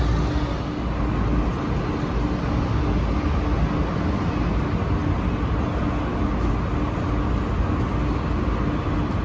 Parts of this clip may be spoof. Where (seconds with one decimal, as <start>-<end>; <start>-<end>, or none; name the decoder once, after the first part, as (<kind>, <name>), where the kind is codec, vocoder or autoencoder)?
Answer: none